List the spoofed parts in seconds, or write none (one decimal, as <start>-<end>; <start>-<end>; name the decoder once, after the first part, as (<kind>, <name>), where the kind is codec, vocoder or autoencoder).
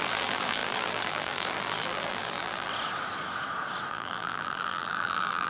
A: 0.0-2.7 (vocoder, BigVGAN v2); 3.9-5.5